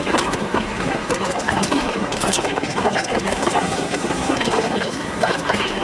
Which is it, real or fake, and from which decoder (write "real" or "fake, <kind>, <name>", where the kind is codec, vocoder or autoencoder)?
fake, codec, SNAC